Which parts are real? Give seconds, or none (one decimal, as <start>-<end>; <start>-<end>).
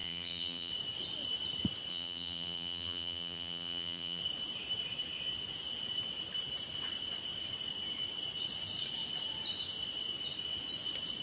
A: 0.7-1.9; 4.2-11.2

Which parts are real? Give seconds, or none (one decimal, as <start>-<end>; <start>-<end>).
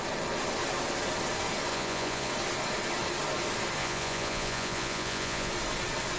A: 0.0-1.7; 2.3-3.8; 5.5-6.2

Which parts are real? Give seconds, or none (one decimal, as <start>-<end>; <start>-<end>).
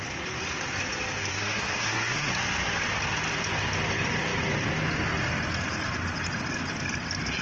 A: 0.0-1.3; 2.3-7.4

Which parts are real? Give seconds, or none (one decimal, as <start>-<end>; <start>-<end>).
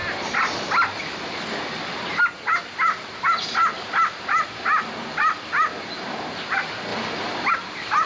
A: 0.0-8.1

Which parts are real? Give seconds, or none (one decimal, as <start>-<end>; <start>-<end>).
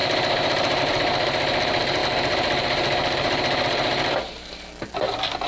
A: 0.8-5.5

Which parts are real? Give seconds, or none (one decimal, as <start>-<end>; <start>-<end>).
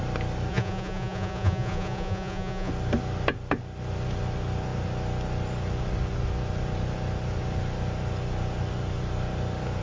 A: 0.0-0.5; 2.7-9.8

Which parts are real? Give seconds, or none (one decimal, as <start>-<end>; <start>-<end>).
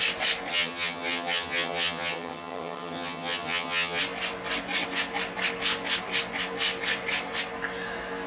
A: 0.0-0.5; 4.0-8.3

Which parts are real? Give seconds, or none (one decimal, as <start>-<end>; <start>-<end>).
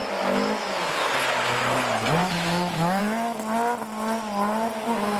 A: 1.1-2.2; 3.0-5.2